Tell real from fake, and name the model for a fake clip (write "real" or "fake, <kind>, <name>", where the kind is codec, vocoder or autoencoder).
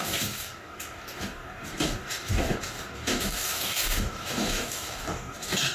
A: fake, codec, DAC